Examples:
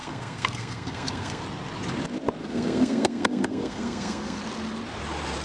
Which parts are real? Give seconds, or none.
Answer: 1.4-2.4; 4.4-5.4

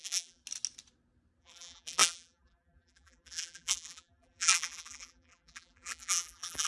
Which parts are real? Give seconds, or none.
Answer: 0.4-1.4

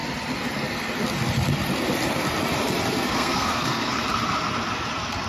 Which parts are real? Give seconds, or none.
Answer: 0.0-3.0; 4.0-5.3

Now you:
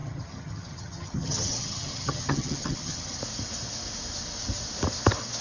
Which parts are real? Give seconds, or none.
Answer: 3.2-5.4

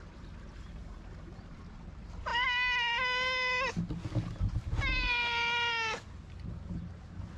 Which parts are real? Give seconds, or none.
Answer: 0.0-7.4

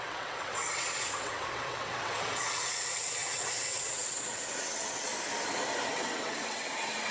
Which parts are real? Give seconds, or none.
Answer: 5.1-5.9